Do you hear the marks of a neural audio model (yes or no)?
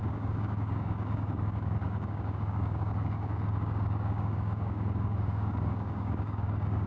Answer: yes